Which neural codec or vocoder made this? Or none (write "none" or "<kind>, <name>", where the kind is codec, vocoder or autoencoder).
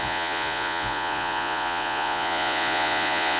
vocoder, Vocos